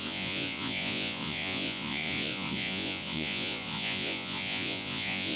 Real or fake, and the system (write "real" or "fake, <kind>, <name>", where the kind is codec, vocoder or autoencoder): fake, vocoder, Vocos